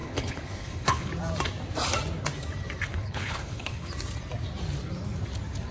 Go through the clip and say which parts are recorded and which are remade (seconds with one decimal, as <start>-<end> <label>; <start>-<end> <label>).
0.0-1.1 remade; 1.1-2.9 recorded; 2.9-3.9 remade; 3.9-5.7 recorded